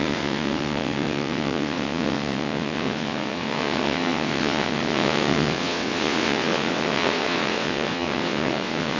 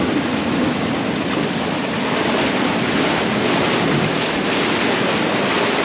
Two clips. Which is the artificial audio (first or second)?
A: first